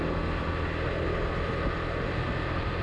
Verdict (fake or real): real